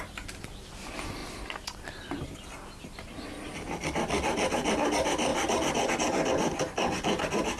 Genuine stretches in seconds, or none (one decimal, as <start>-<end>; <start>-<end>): 0.0-7.6